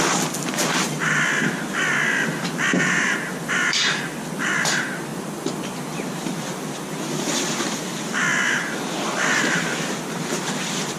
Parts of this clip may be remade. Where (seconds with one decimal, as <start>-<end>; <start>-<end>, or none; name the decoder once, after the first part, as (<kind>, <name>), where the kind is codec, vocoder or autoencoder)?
2.7-4.0 (vocoder, BigVGAN v2)